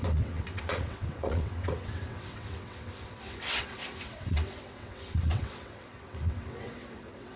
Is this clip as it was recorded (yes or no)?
no